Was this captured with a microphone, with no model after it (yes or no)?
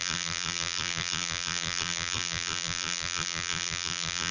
no